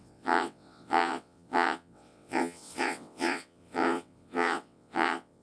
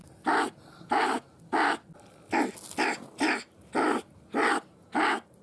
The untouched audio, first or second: second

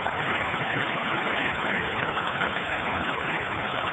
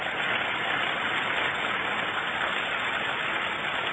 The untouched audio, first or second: second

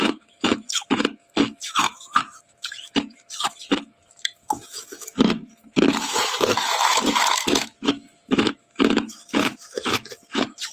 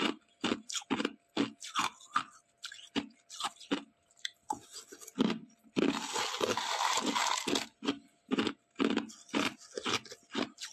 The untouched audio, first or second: second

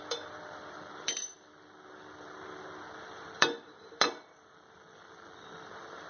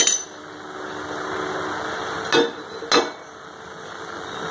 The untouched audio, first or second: second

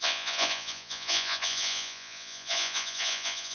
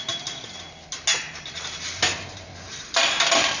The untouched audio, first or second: second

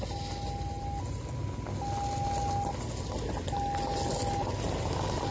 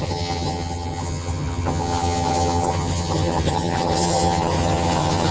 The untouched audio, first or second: first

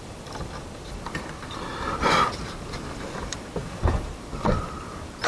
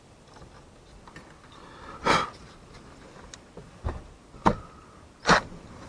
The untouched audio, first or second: second